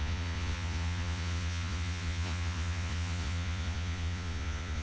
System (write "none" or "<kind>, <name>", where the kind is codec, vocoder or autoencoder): vocoder, Vocos